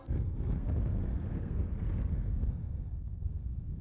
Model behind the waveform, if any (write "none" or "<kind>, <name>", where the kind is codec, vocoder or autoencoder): codec, SNAC